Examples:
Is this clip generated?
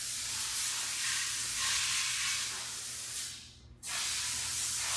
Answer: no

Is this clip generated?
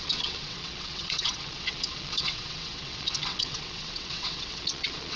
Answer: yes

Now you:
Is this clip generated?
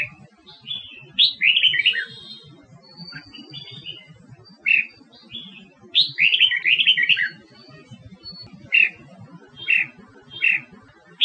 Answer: no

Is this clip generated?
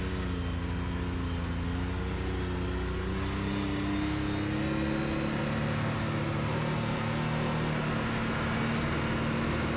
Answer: no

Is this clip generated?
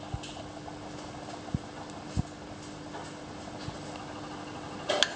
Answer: no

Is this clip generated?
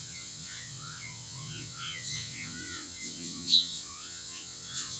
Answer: yes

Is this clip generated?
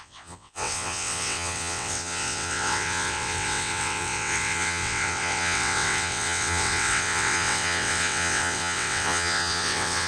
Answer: yes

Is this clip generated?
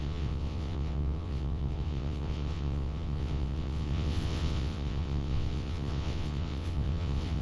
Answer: yes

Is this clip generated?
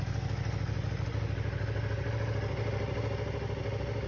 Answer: no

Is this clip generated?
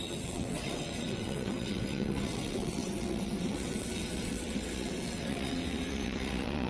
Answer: yes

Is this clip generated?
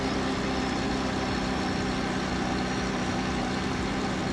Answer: no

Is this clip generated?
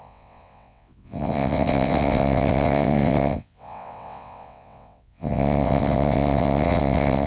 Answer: yes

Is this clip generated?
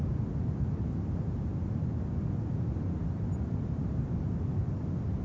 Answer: no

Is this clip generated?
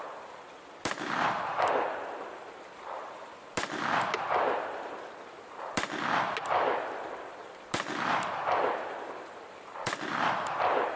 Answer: no